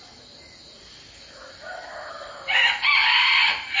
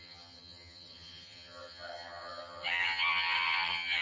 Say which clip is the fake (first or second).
second